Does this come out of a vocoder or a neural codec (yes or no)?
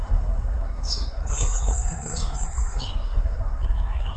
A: yes